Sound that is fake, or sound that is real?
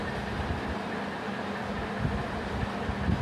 real